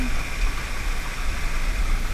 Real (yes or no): yes